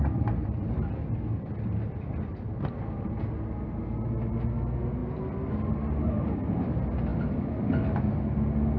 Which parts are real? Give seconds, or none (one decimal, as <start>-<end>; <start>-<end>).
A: 0.0-8.8